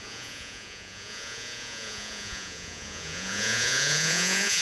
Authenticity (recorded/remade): remade